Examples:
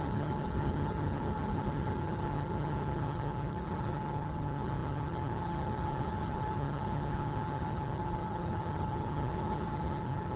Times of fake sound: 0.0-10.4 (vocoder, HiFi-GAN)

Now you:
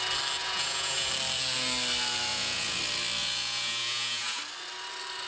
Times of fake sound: 0.4-1.1 (vocoder, Vocos); 2.3-2.8; 3.2-4.4

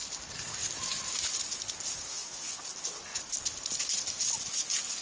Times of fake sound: 2.1-2.6 (vocoder, Vocos)

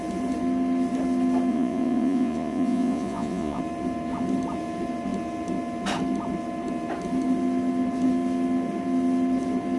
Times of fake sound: 1.5-3.6 (vocoder, Vocos)

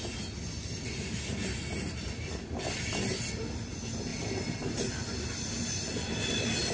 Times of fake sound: 1.4-2.1 (vocoder, BigVGAN v2); 4.1-6.1

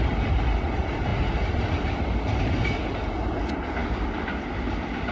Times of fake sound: none